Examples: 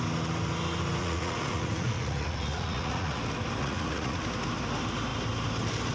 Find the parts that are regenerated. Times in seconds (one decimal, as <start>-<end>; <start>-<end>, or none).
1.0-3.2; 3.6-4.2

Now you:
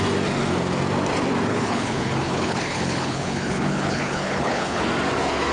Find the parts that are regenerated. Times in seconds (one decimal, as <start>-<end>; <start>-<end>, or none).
1.5-4.8

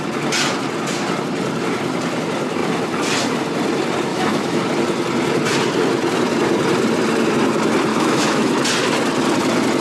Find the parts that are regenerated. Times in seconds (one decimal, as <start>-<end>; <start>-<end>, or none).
4.1-4.6; 7.9-8.5

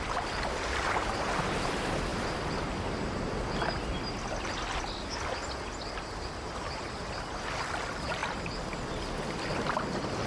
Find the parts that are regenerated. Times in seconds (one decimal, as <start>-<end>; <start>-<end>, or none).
2.1-2.8; 8.2-9.0

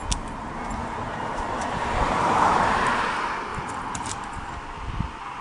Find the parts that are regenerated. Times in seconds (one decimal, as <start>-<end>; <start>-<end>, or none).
0.8-2.6; 3.5-4.3

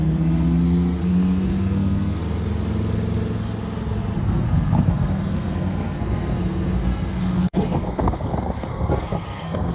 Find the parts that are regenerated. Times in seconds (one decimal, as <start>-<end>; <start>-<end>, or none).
0.0-2.2; 4.2-9.7